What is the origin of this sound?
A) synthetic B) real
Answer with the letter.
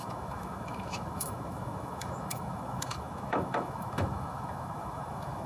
A